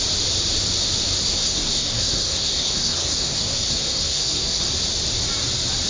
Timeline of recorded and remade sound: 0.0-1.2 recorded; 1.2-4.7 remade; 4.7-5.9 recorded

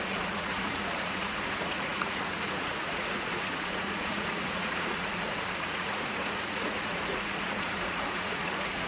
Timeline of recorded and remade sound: 0.0-8.9 remade